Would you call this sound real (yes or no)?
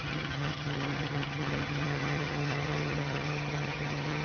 no